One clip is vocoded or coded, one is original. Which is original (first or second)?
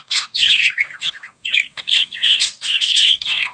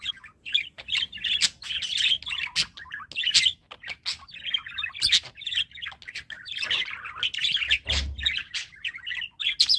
second